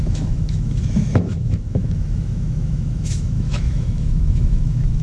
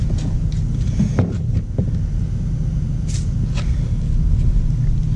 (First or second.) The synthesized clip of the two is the first